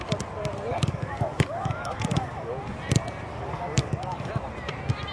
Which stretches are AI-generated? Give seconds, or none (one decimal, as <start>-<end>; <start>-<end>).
0.7-2.5; 3.3-4.3

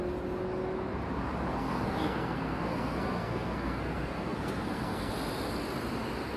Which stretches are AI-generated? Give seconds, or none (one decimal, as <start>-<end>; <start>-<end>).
1.5-5.1